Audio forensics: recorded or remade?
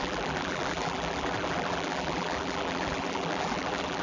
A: remade